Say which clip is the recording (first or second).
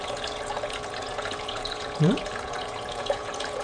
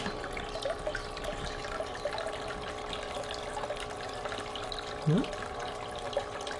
second